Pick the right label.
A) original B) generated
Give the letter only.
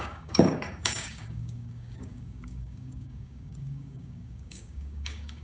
B